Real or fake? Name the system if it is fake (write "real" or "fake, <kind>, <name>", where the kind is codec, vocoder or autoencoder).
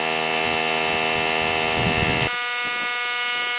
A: real